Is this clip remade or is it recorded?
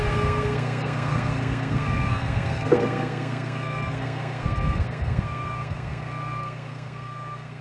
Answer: remade